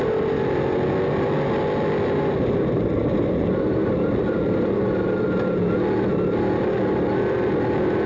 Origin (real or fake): real